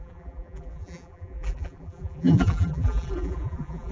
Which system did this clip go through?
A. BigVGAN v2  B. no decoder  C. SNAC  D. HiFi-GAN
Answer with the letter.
A